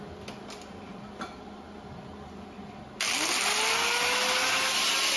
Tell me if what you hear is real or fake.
real